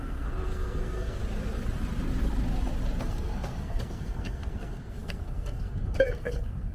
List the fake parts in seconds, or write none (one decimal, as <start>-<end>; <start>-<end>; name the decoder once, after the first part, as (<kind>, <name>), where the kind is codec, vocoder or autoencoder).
0.0-1.2 (codec, SNAC); 3.0-6.7